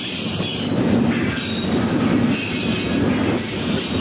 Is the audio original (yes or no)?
yes